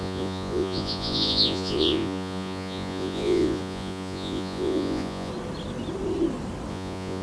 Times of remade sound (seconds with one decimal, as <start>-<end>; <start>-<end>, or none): 0.0-5.3; 6.7-7.2